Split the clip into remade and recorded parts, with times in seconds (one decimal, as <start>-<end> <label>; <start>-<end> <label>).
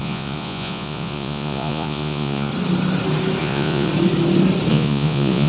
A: 0.0-2.5 remade; 2.5-3.4 recorded; 3.4-3.9 remade; 3.9-4.7 recorded; 4.7-5.5 remade